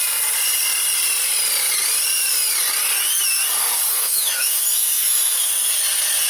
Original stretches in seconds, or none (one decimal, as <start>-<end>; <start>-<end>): 0.0-3.9; 5.7-6.3